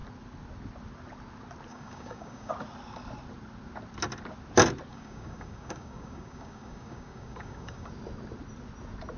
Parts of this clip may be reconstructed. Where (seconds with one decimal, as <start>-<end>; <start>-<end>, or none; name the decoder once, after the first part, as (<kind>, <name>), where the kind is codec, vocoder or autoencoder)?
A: 1.7-2.5 (codec, DAC); 4.9-7.9